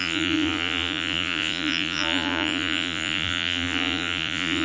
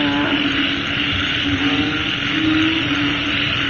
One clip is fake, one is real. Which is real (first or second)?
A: second